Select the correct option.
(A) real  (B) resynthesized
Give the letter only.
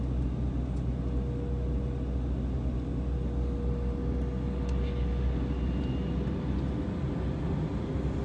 A